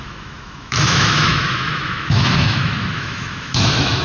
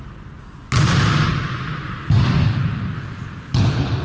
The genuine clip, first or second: second